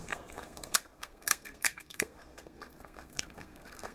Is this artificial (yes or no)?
yes